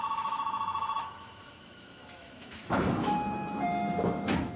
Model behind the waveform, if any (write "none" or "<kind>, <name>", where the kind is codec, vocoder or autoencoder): autoencoder, DAC-VAE